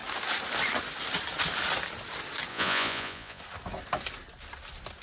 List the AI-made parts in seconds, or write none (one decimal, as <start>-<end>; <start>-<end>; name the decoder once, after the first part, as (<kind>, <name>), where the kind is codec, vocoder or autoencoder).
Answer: 2.5-3.4 (vocoder, Vocos)